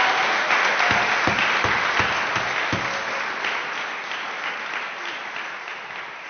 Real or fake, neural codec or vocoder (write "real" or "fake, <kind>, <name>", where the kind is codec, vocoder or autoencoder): real